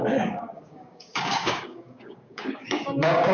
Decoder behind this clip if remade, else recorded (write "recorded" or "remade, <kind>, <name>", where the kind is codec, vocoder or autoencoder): remade, codec, DAC